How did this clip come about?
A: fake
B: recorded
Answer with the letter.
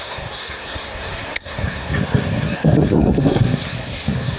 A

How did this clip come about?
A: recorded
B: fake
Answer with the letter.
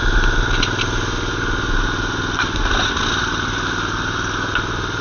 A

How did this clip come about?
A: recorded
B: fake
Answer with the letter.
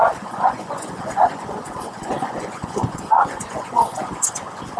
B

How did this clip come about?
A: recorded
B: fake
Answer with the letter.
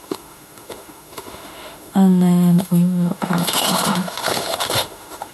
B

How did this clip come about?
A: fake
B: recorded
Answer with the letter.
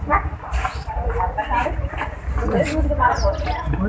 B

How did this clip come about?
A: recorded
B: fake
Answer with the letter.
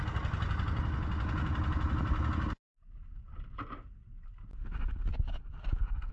A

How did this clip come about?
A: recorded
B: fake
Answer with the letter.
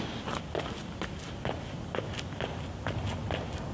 A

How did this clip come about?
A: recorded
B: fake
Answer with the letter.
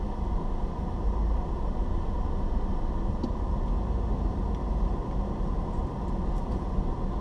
A